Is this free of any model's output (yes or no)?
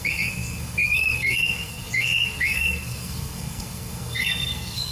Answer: no